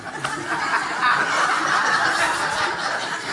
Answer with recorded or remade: remade